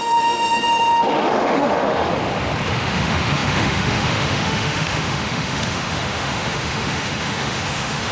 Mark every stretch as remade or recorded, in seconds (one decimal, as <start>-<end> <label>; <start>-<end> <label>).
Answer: 0.0-2.1 remade; 2.1-2.7 recorded; 2.7-8.1 remade